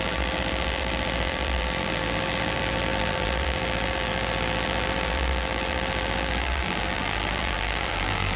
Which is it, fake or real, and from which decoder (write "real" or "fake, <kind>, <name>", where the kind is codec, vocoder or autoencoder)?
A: fake, vocoder, BigVGAN v2